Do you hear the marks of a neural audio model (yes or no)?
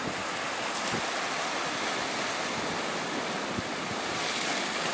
no